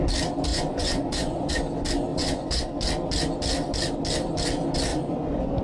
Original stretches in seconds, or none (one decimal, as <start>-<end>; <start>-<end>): 0.0-0.5; 1.5-2.1; 2.6-4.9